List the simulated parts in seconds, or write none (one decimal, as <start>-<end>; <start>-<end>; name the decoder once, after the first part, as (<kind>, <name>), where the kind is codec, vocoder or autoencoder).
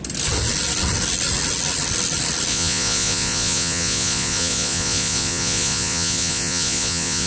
2.5-7.3 (vocoder, Vocos)